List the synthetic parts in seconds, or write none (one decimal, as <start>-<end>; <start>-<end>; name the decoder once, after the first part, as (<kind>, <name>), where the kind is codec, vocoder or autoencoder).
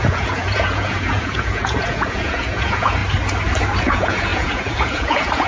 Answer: 0.0-3.0 (vocoder, Vocos); 3.8-5.5